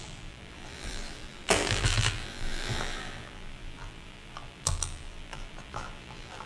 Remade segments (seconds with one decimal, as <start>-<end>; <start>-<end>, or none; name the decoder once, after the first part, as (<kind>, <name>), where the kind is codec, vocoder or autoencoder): 0.0-6.5 (vocoder, BigVGAN v2)